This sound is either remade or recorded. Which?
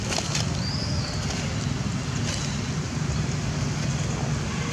recorded